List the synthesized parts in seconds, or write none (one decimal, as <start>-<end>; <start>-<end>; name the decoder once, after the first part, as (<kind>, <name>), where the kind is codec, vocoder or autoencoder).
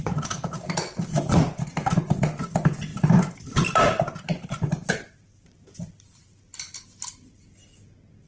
none